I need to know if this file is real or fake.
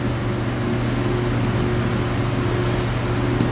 real